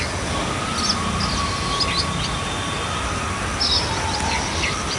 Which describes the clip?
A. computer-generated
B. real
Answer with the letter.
B